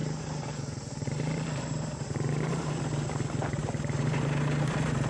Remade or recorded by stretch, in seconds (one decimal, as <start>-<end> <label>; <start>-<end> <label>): 0.0-2.8 remade; 2.8-5.1 recorded

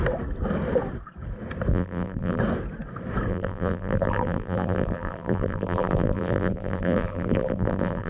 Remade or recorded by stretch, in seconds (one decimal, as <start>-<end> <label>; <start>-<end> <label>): 0.0-1.7 recorded; 1.7-2.4 remade; 2.4-3.3 recorded; 3.3-8.1 remade

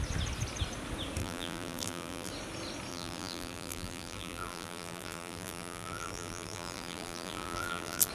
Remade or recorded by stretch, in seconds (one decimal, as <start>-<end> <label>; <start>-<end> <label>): 0.0-1.2 recorded; 1.2-2.3 remade; 2.3-2.9 recorded; 2.9-8.1 remade

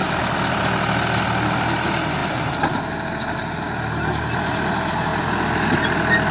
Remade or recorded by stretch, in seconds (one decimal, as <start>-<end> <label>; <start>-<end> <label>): 0.0-0.6 remade; 0.6-2.2 recorded; 2.2-2.7 remade; 2.7-5.1 recorded; 5.1-5.6 remade; 5.6-6.3 recorded

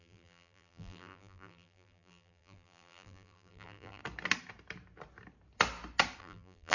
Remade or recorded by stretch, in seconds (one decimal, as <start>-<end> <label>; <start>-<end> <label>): 0.0-4.0 remade; 4.0-6.2 recorded; 6.2-6.7 remade

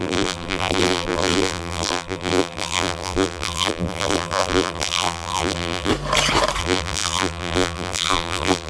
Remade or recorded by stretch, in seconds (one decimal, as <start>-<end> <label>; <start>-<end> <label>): 0.0-5.9 remade; 5.9-6.6 recorded; 6.6-8.7 remade

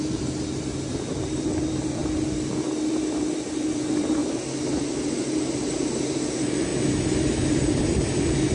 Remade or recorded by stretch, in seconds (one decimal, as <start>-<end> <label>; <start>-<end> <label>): 0.0-2.0 remade; 2.0-2.5 recorded; 2.5-4.2 remade; 4.2-5.9 recorded; 5.9-6.7 remade; 6.7-7.8 recorded; 7.8-8.5 remade